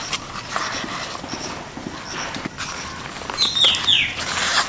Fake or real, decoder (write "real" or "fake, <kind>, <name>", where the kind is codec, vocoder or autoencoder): real